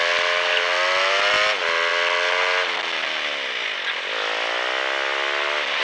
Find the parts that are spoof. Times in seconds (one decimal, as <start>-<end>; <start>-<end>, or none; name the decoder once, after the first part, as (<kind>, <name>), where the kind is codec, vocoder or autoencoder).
none